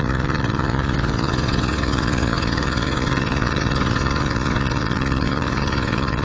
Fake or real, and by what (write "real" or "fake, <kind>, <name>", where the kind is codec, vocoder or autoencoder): fake, vocoder, WaveNeXt